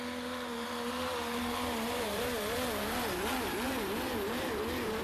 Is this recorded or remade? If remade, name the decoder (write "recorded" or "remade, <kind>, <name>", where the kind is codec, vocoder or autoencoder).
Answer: remade, vocoder, BigVGAN v2